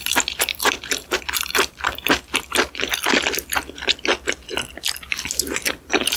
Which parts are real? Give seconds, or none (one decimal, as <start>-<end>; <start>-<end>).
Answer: 2.9-5.8